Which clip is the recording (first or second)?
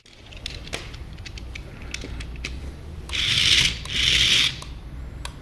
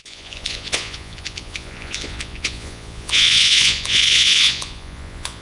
first